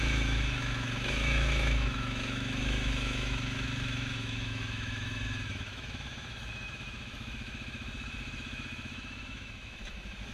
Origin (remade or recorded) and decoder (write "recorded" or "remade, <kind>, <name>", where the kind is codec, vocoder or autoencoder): remade, autoencoder, DAC-VAE